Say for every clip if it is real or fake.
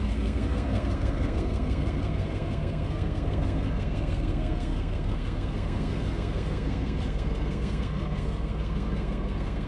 fake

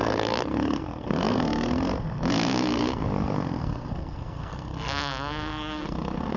fake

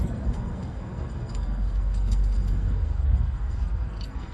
fake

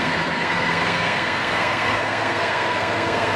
fake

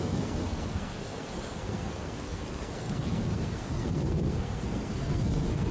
fake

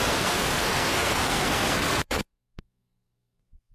fake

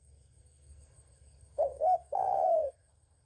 fake